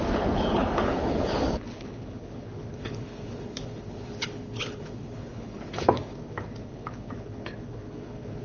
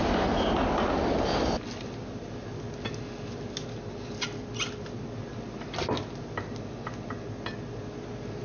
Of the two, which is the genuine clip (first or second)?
second